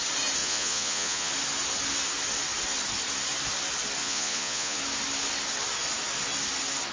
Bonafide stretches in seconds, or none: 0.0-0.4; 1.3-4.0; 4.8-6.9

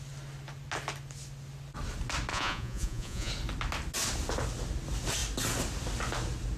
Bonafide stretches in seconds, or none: 0.0-2.3; 3.3-6.6

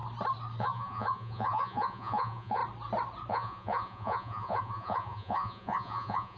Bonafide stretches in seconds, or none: 0.0-0.6; 2.6-3.3

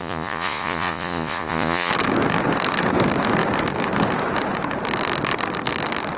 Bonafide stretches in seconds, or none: 1.9-6.2

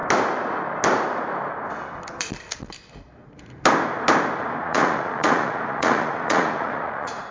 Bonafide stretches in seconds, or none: 0.0-4.6

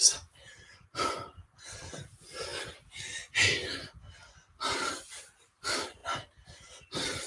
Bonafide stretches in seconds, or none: 0.0-0.7; 1.8-7.3

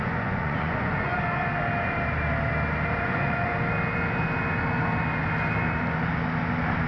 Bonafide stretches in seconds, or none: 1.1-3.0; 3.5-6.9

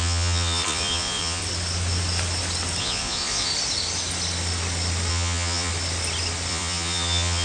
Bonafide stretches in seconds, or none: 1.4-2.8; 3.5-5.1; 5.7-6.5